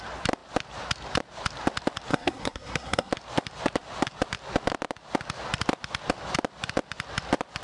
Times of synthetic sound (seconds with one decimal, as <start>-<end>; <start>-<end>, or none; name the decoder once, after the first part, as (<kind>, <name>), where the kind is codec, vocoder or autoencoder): 2.1-3.1 (codec, SNAC)